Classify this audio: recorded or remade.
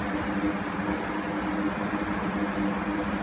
recorded